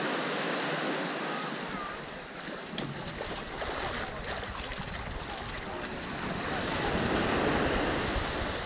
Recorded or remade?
recorded